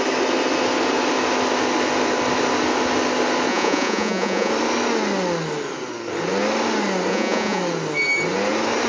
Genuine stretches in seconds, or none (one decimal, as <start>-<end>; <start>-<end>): 0.0-3.5; 4.5-7.1; 7.6-8.9